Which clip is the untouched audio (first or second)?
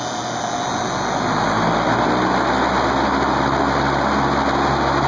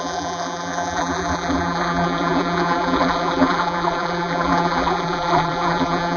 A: first